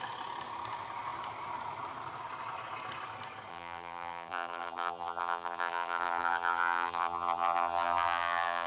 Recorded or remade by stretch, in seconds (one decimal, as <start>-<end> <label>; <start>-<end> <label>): 0.0-3.5 recorded; 3.5-8.7 remade